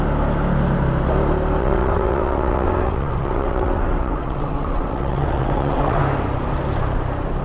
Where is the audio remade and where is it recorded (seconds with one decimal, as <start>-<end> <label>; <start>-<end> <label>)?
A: 0.0-1.6 recorded; 1.6-6.0 remade; 6.0-7.4 recorded